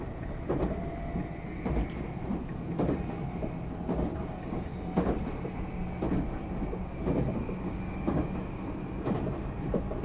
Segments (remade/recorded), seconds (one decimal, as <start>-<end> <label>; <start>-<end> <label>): 0.0-4.1 recorded; 4.1-4.7 remade; 4.7-6.8 recorded; 6.8-8.8 remade; 8.8-10.0 recorded